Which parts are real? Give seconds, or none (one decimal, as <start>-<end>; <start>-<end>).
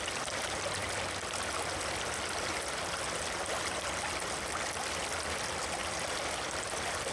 0.0-5.8; 6.4-7.1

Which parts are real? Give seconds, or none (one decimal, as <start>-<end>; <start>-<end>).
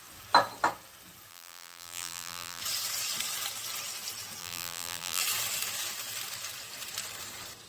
0.0-1.3; 2.6-4.4; 5.2-7.7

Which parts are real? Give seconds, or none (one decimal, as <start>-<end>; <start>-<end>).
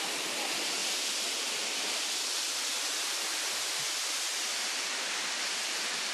0.0-0.8; 3.8-6.1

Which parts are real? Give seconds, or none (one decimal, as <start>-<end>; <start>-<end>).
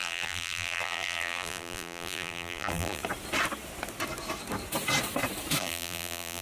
3.0-5.6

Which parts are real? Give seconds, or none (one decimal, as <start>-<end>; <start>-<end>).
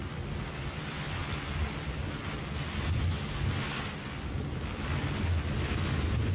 0.0-6.3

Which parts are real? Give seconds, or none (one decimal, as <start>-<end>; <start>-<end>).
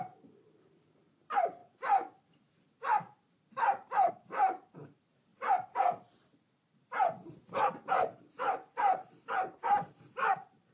none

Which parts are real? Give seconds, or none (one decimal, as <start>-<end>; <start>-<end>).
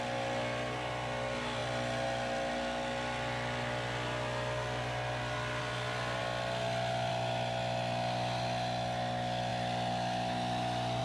0.0-11.0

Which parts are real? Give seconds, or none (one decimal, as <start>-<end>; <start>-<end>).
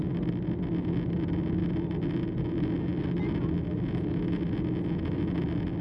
0.0-5.8